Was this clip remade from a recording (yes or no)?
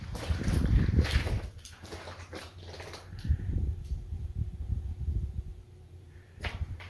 yes